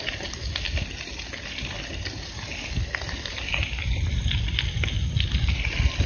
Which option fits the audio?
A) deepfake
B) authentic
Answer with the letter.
B